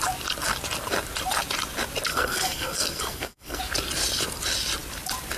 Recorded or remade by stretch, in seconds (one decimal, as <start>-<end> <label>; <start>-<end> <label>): 0.0-2.1 recorded; 2.1-3.6 remade; 3.6-5.4 recorded